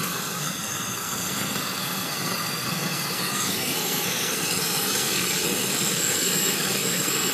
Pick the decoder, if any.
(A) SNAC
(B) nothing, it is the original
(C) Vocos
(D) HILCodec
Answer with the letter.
A